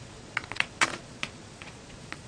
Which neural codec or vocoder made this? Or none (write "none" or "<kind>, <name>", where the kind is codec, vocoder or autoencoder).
vocoder, Vocos